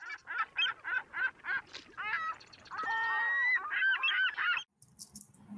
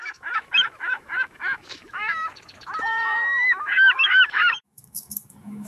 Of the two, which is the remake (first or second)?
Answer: second